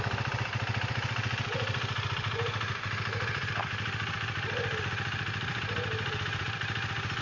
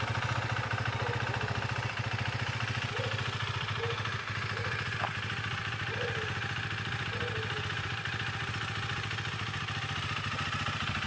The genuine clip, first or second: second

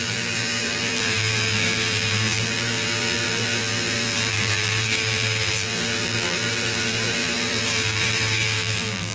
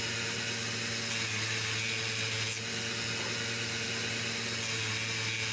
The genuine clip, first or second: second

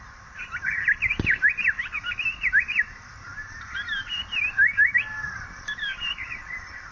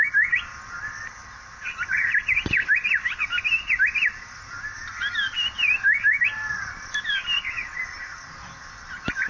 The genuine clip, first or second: second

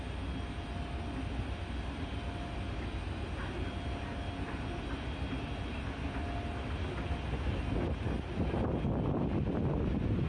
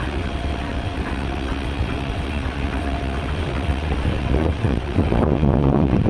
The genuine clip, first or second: first